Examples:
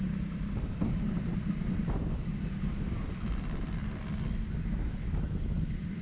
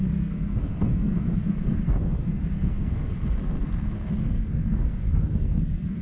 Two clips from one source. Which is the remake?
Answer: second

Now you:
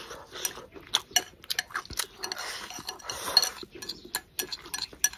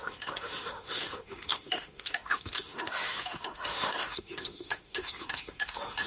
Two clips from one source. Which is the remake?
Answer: second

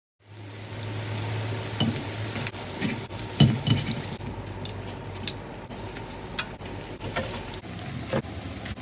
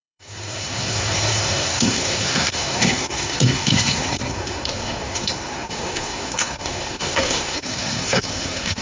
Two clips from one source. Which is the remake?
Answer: second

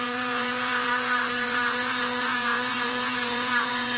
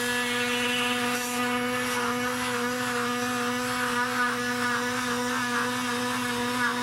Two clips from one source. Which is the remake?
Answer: first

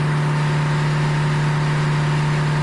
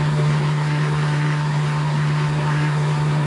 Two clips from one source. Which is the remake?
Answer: second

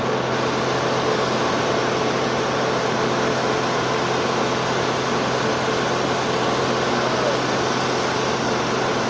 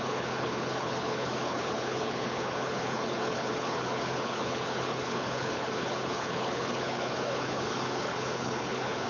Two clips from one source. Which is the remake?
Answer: second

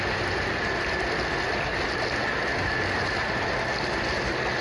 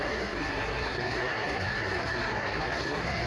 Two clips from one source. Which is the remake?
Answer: second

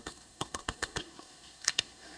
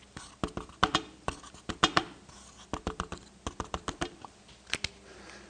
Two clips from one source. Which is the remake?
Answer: first